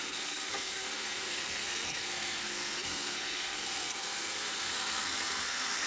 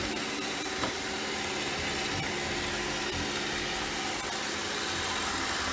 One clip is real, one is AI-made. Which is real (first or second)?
second